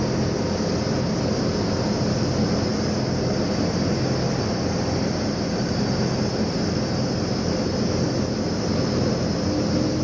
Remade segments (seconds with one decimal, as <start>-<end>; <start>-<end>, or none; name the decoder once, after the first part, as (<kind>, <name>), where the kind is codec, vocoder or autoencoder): none